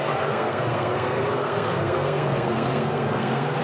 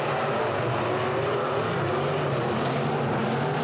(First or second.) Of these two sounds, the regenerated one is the first